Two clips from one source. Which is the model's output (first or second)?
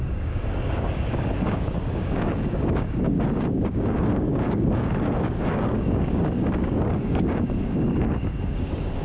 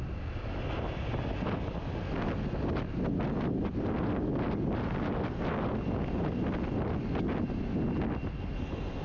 first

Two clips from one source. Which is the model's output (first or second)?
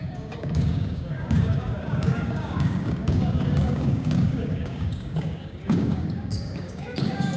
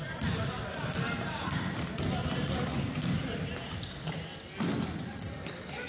first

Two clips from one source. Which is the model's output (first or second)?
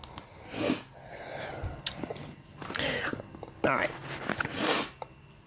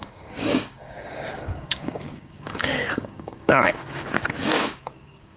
second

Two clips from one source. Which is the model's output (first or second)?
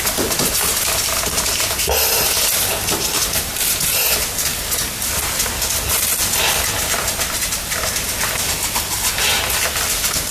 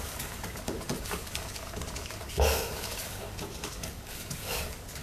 second